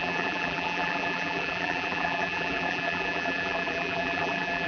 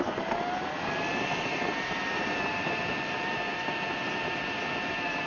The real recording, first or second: second